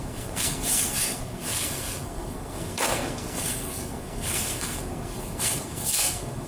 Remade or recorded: remade